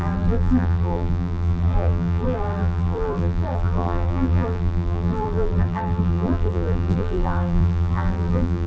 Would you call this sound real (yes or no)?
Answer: no